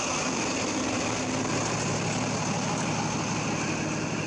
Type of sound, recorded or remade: recorded